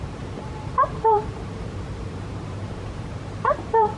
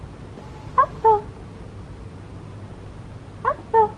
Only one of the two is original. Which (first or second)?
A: second